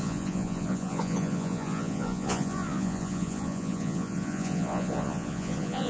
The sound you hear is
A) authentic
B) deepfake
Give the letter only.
B